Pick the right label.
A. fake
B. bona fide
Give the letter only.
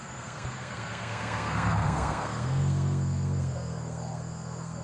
A